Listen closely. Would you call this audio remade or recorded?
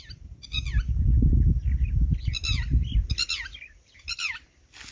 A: recorded